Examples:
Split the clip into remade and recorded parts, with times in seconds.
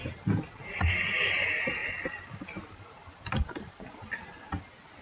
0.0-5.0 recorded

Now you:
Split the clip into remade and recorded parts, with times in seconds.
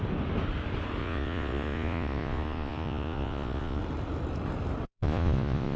0.0-1.0 recorded; 1.0-3.8 remade; 3.8-4.9 recorded; 4.9-5.8 remade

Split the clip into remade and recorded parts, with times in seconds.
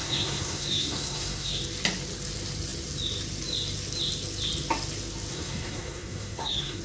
0.0-1.6 remade; 1.6-5.3 recorded; 5.3-6.8 remade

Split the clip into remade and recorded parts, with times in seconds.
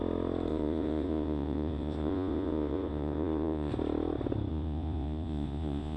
0.0-0.5 recorded; 0.5-3.7 remade; 3.7-4.5 recorded; 4.5-6.0 remade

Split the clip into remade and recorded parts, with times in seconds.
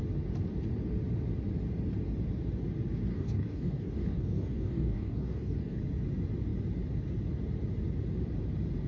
0.0-3.1 recorded; 3.1-5.8 remade; 5.8-8.9 recorded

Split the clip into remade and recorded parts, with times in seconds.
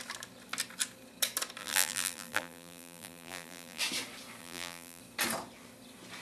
0.0-1.6 recorded; 1.6-3.8 remade; 3.8-4.4 recorded; 4.4-5.0 remade; 5.0-6.2 recorded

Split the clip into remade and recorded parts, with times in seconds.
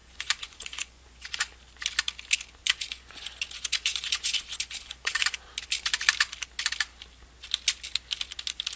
0.0-1.5 remade; 1.5-2.6 recorded; 2.6-5.4 remade; 5.4-8.8 recorded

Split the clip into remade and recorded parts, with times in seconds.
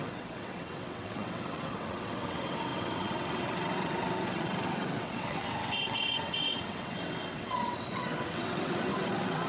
0.0-9.5 remade